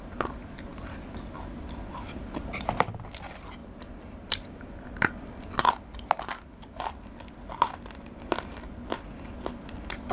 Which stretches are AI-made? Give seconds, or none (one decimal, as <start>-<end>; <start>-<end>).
3.6-5.7